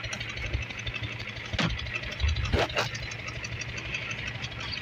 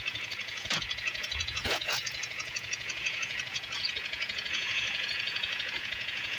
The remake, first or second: second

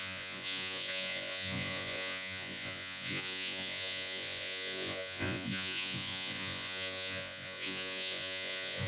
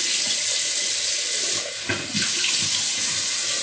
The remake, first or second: first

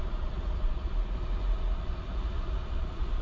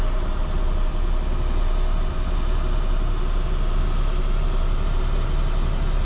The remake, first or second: first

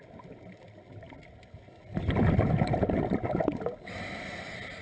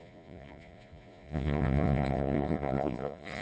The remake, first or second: second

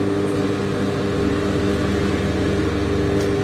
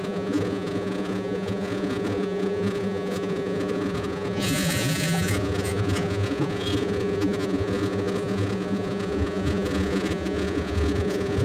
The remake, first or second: second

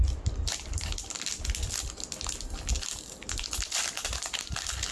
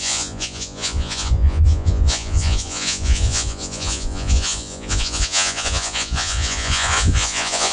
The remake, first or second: second